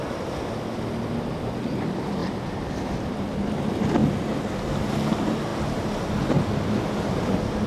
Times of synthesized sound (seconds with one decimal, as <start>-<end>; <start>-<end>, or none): 5.5-6.8